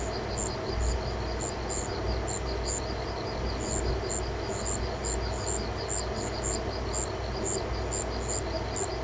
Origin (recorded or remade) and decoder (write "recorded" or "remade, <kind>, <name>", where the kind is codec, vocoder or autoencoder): recorded